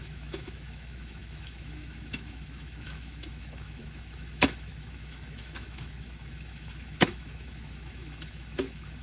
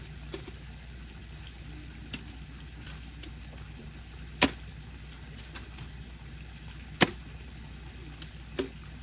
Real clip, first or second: second